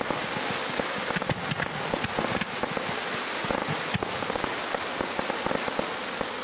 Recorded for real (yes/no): yes